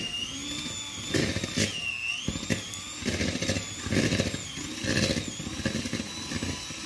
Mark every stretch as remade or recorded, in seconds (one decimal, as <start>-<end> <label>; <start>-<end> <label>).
0.0-6.9 recorded